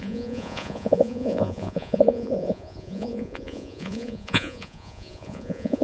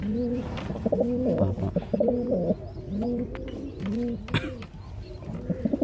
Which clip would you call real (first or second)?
second